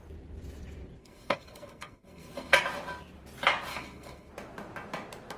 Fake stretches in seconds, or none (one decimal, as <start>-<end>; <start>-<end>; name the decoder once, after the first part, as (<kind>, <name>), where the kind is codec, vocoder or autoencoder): 1.0-2.6 (codec, SNAC); 3.7-4.3